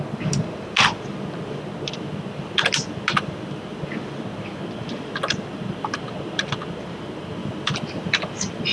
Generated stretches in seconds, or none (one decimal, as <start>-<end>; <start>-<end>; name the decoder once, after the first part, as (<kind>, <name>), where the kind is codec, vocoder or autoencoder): 7.4-8.7 (vocoder, BigVGAN v2)